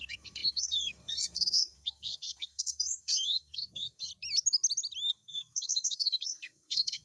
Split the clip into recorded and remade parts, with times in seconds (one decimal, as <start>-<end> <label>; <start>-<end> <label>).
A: 0.0-4.1 remade; 4.1-5.1 recorded; 5.1-7.0 remade